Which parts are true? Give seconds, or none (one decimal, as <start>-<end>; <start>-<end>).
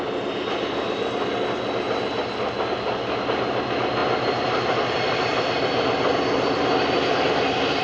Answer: 0.0-7.8